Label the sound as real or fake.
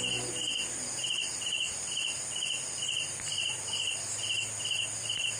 real